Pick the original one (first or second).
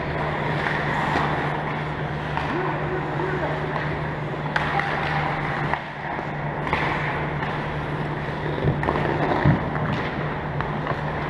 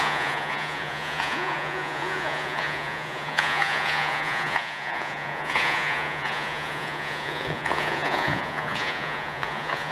first